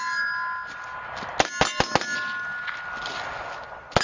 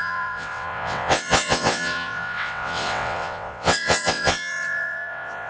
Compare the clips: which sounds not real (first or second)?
second